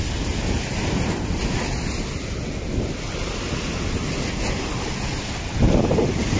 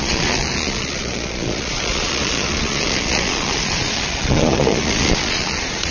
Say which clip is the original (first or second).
first